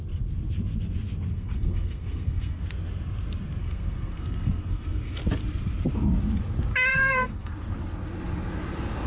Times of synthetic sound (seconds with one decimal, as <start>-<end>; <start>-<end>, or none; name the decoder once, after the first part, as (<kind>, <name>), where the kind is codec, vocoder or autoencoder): 1.3-2.6 (codec, SNAC); 3.6-5.2; 6.9-7.5